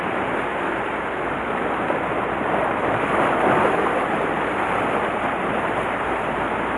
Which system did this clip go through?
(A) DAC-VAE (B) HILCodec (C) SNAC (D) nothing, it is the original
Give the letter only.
D